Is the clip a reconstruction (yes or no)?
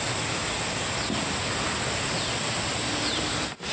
no